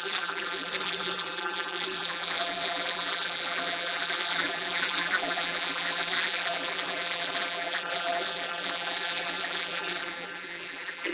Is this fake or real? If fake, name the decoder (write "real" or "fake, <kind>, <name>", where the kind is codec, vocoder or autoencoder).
fake, vocoder, BigVGAN v2